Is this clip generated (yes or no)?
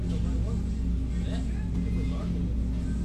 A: no